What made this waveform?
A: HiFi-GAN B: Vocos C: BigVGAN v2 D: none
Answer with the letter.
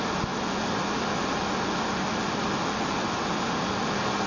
D